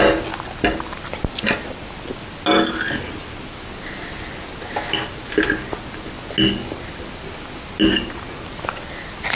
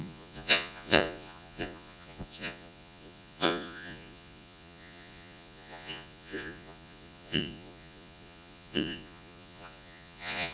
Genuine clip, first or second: first